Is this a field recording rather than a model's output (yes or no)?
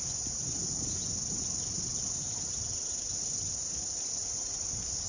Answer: yes